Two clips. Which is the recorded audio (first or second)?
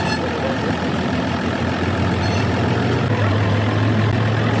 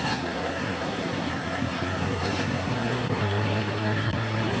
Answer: first